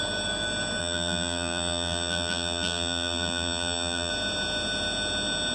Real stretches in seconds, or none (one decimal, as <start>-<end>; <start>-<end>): 0.0-0.8; 4.1-5.5